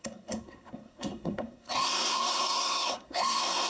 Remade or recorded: remade